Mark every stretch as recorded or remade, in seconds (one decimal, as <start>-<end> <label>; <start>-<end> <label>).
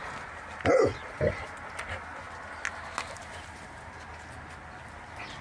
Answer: 0.0-5.4 recorded